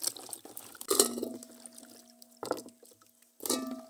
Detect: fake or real real